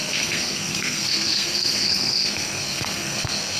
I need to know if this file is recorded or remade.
remade